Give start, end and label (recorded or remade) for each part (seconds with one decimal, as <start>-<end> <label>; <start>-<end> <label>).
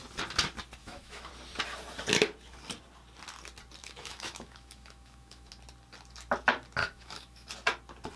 0.0-0.8 recorded; 0.8-1.3 remade; 1.3-3.8 recorded; 3.8-5.5 remade; 5.5-6.8 recorded; 6.8-7.5 remade; 7.5-8.2 recorded